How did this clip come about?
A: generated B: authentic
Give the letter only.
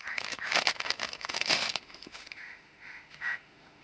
A